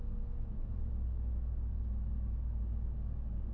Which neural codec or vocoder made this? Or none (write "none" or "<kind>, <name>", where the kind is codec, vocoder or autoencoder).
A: none